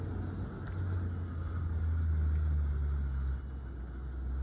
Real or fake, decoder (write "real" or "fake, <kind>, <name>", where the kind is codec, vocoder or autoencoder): real